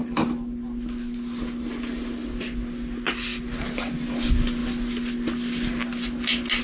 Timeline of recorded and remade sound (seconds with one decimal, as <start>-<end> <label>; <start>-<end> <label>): 0.0-6.6 recorded